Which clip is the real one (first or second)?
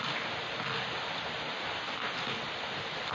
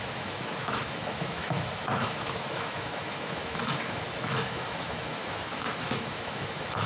first